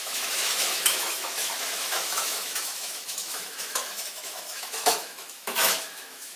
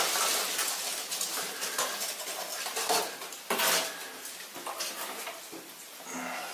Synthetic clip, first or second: first